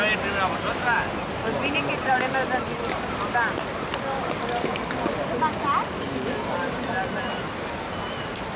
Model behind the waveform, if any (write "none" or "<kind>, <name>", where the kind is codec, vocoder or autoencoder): none